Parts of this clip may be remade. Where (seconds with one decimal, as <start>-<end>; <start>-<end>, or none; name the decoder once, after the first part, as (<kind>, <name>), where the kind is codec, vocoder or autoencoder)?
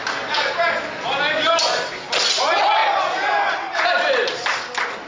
none